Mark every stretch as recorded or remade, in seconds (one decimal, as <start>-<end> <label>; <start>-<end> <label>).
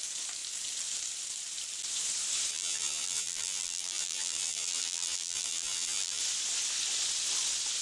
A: 0.0-2.5 recorded; 2.5-6.2 remade; 6.2-7.8 recorded